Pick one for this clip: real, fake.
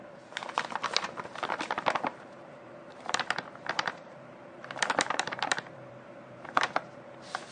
fake